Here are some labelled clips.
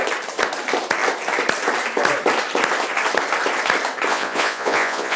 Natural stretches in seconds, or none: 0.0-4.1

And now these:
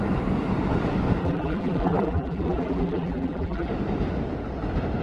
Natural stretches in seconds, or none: 0.0-1.2; 3.7-5.0